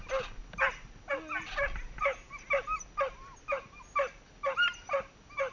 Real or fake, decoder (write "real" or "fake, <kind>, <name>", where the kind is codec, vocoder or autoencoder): real